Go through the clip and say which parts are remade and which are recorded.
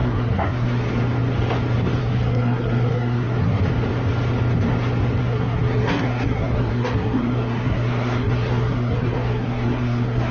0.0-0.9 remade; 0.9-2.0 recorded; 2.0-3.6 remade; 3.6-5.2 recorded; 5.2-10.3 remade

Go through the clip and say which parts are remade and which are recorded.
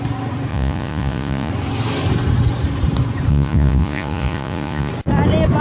0.0-0.5 recorded; 0.5-1.5 remade; 1.5-3.3 recorded; 3.3-4.9 remade; 4.9-5.6 recorded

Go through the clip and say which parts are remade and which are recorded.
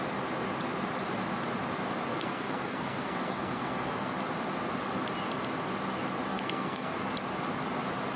0.0-2.1 recorded; 2.1-4.1 remade; 4.1-6.3 recorded; 6.3-7.0 remade; 7.0-8.2 recorded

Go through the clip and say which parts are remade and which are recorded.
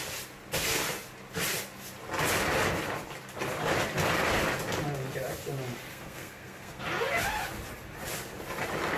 0.0-5.9 recorded; 5.9-6.8 remade; 6.8-9.0 recorded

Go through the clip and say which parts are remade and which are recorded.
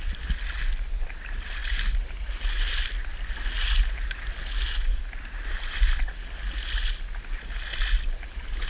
0.0-8.7 recorded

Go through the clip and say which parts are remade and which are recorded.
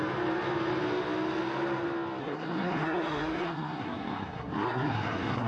0.0-2.2 recorded; 2.2-5.5 remade